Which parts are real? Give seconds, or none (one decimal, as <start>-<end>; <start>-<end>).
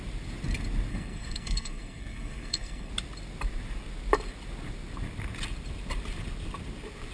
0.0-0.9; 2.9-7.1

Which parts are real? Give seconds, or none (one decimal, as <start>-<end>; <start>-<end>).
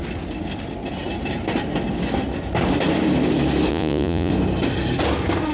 0.0-3.7; 4.3-5.5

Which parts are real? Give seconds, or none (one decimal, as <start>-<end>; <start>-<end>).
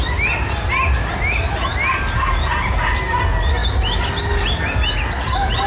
0.0-5.7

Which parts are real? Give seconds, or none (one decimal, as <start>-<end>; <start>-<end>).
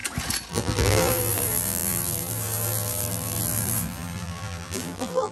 0.0-0.5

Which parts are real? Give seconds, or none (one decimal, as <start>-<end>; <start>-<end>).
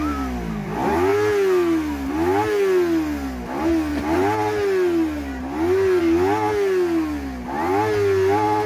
0.0-8.7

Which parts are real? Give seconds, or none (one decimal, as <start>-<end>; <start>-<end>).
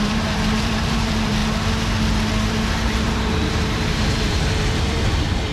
1.4-2.5